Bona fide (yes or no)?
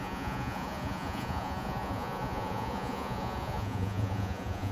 no